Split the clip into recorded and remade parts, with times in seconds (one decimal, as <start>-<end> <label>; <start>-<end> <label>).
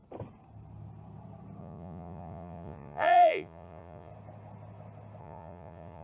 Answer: 0.0-1.6 recorded; 1.6-4.1 remade; 4.1-5.2 recorded; 5.2-6.0 remade